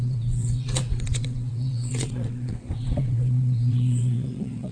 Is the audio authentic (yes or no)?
no